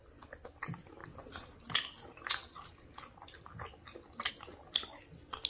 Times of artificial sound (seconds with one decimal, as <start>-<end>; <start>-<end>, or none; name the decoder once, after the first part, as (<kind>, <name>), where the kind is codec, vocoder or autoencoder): none